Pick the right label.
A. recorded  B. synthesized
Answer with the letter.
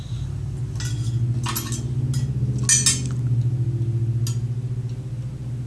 A